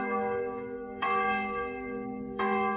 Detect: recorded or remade remade